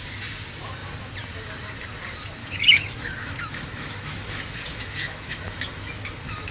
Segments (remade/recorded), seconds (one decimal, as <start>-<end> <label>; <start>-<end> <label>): 0.0-2.4 recorded; 2.4-6.5 remade